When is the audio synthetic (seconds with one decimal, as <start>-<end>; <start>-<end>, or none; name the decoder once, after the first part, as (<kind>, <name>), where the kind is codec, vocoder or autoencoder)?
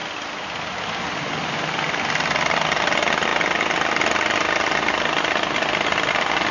none